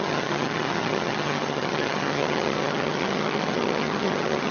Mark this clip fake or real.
fake